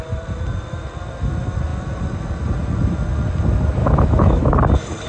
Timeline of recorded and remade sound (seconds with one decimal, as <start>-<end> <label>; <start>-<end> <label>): 0.0-3.8 recorded; 3.8-4.5 remade; 4.5-5.1 recorded